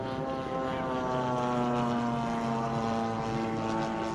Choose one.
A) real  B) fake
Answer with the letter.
A